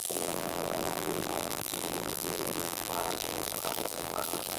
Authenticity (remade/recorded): remade